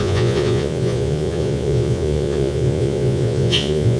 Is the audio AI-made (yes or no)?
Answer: yes